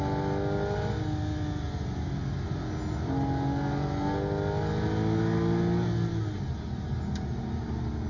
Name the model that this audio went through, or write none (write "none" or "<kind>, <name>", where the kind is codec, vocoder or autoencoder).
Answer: none